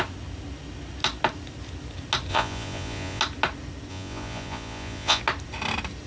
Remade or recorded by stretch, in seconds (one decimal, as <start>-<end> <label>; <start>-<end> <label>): 0.0-2.3 recorded; 2.3-3.2 remade; 3.2-3.9 recorded; 3.9-5.2 remade; 5.2-6.1 recorded